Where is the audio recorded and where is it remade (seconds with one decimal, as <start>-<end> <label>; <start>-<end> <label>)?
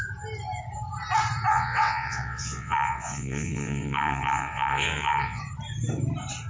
0.0-1.5 recorded; 1.5-5.4 remade; 5.4-6.5 recorded